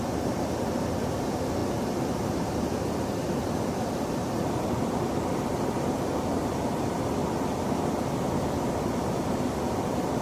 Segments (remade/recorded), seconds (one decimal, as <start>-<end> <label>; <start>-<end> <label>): 0.0-7.2 remade; 7.2-8.8 recorded; 8.8-10.2 remade

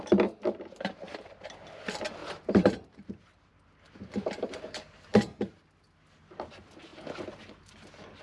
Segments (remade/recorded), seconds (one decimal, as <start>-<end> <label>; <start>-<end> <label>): 0.0-2.2 recorded; 2.2-3.1 remade; 3.1-5.1 recorded; 5.1-5.6 remade; 5.6-8.2 recorded

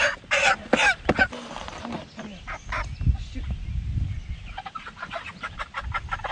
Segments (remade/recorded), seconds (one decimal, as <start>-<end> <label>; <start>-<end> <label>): 0.0-0.4 recorded; 0.4-1.0 remade; 1.0-6.3 recorded

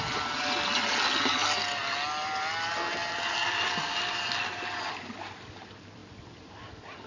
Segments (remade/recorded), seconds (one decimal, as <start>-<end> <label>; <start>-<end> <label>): 0.0-3.0 recorded; 3.0-4.1 remade; 4.1-6.0 recorded; 6.0-7.1 remade

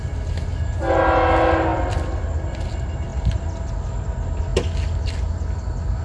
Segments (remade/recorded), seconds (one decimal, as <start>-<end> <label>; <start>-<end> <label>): 0.0-1.7 recorded; 1.7-2.5 remade; 2.5-3.1 recorded; 3.1-3.7 remade; 3.7-6.0 recorded